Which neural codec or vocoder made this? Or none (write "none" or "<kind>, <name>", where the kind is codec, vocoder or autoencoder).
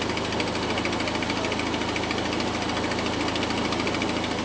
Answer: none